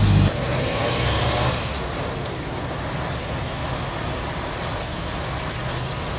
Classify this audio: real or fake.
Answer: real